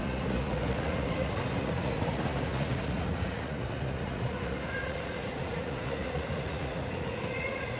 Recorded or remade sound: remade